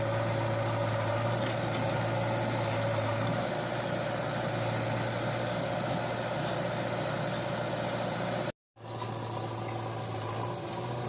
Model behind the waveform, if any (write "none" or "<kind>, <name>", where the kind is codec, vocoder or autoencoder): none